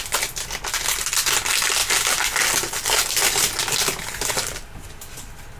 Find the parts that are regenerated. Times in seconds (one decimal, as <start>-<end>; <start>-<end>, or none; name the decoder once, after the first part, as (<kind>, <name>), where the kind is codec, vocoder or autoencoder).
none